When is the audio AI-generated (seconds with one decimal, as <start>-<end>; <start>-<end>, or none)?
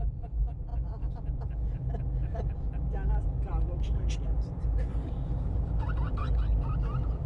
none